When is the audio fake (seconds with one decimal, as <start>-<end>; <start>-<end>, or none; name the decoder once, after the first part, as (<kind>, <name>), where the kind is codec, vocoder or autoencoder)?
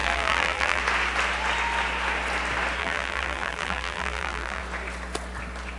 0.0-0.8 (vocoder, BigVGAN v2); 2.8-4.6